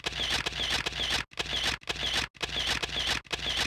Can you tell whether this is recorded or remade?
recorded